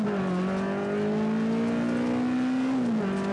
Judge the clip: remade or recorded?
recorded